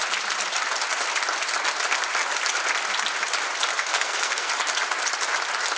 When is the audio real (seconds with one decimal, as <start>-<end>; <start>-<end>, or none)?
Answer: 0.0-3.7; 4.5-5.8